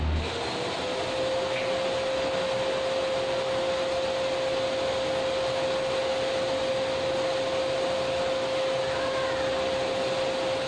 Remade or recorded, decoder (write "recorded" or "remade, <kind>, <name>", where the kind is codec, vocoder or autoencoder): recorded